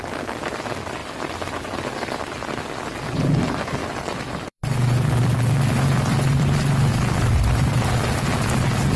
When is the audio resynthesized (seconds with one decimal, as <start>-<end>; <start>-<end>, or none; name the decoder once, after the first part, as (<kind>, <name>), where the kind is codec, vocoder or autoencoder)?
1.0-2.3 (vocoder, BigVGAN v2); 3.8-8.5